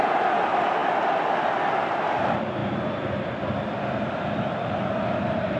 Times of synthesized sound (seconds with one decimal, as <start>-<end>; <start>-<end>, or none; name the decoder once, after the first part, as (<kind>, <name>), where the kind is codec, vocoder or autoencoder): none